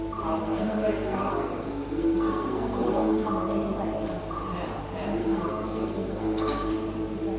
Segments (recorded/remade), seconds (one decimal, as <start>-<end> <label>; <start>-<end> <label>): 0.0-0.4 recorded; 0.4-3.3 remade; 3.3-5.2 recorded; 5.2-6.7 remade; 6.7-7.4 recorded